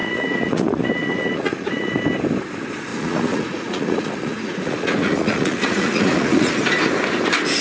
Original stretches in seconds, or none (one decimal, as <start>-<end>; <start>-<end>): 2.0-2.9; 6.5-7.6